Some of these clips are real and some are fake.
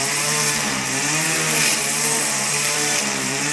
fake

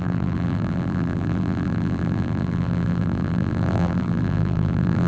fake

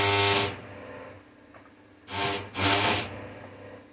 real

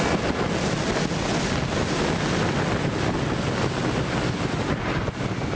real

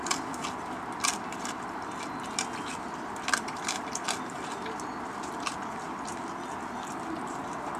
real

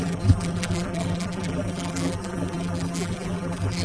fake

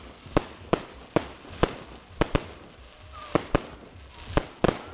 real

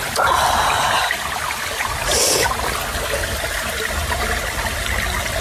real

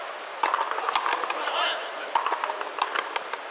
real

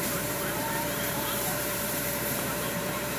fake